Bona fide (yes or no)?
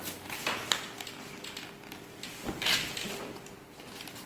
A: yes